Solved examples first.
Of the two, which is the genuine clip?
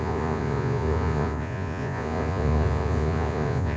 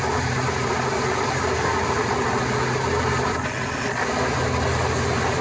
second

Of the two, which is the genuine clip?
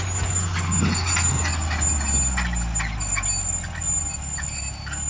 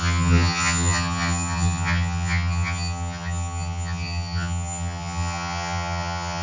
first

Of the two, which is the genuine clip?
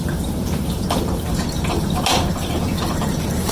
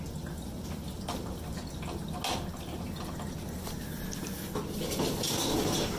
second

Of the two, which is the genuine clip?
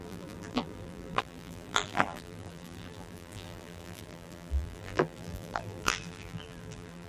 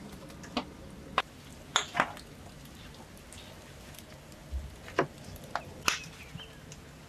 second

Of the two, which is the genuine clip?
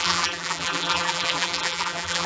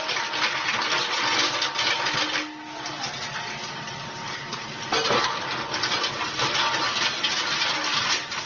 second